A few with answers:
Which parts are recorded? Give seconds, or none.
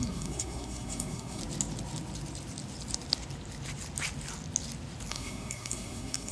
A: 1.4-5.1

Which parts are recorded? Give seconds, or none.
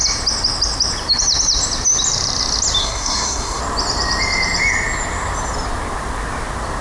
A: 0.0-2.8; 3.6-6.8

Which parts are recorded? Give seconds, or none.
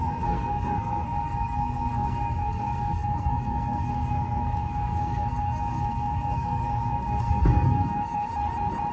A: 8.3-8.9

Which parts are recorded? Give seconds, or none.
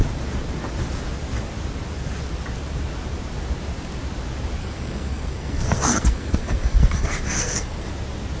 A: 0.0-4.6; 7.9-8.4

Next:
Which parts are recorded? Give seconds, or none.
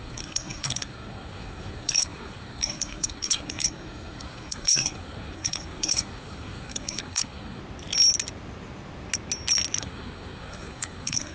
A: 7.6-9.8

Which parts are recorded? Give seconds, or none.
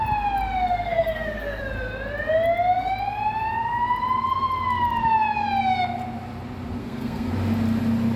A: 0.0-0.7; 1.6-6.8; 7.3-8.2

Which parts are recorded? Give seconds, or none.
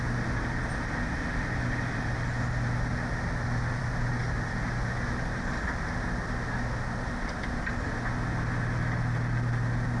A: 0.0-10.0